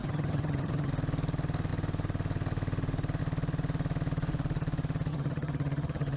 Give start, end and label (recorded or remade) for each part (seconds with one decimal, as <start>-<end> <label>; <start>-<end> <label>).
0.0-0.9 remade; 0.9-5.1 recorded; 5.1-6.2 remade